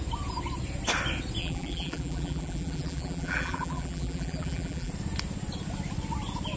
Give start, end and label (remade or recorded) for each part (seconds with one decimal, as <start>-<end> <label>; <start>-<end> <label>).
0.0-1.4 recorded; 1.4-4.9 remade; 4.9-6.6 recorded

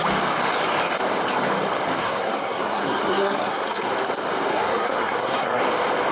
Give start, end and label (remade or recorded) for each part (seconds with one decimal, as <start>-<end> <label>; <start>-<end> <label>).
0.0-2.0 recorded; 2.0-3.9 remade; 3.9-4.5 recorded; 4.5-5.6 remade; 5.6-6.1 recorded

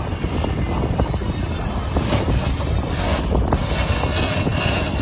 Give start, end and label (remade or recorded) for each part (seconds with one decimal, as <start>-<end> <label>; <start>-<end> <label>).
0.0-5.0 recorded

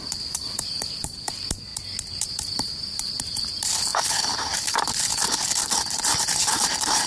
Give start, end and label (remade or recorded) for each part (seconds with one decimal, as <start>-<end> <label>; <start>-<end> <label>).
0.0-1.7 remade; 1.7-2.3 recorded; 2.3-7.1 remade

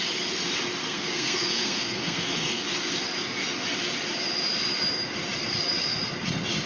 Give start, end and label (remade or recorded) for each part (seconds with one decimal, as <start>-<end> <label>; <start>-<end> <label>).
0.0-0.8 recorded; 0.8-2.9 remade; 2.9-6.7 recorded

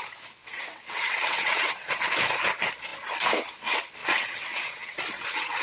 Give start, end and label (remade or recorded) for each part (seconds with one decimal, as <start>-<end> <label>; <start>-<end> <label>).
0.0-0.4 recorded; 0.4-1.9 remade; 1.9-4.0 recorded; 4.0-5.6 remade